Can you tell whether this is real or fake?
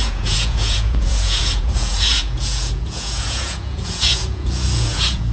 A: fake